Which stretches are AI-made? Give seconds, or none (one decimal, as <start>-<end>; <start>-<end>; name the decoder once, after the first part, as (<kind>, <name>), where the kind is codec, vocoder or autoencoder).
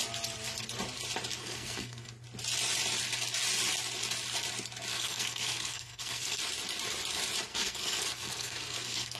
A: 1.4-2.1 (codec, SNAC); 4.9-6.4; 7.5-9.2